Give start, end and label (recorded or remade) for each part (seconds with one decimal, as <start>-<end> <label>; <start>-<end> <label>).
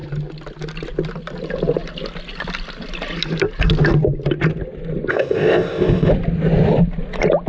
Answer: 0.0-5.1 recorded; 5.1-6.1 remade; 6.1-7.5 recorded